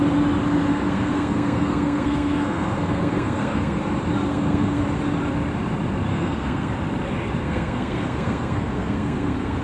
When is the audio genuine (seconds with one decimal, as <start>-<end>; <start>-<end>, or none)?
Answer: 0.0-0.7; 3.8-4.3; 4.8-6.1; 6.7-7.4